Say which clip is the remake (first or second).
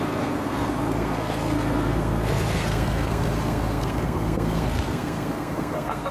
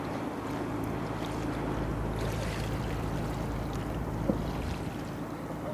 first